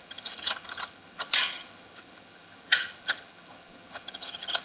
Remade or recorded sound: remade